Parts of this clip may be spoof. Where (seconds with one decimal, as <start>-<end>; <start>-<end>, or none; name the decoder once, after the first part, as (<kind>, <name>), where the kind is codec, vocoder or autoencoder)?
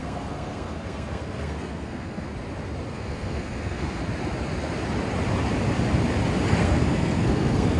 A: 0.0-2.3 (codec, SNAC); 2.9-4.0; 6.6-7.8